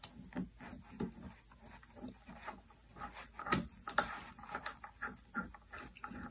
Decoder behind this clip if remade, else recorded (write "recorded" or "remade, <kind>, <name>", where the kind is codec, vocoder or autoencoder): recorded